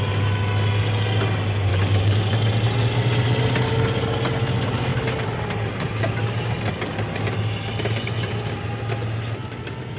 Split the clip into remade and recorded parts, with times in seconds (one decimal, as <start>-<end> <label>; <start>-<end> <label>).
0.0-1.7 recorded; 1.7-2.3 remade; 2.3-10.0 recorded